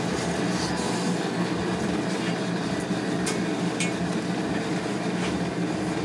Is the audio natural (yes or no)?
yes